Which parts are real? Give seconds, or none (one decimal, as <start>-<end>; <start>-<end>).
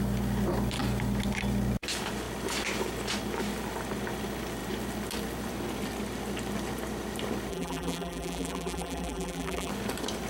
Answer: 0.0-7.5; 9.7-10.3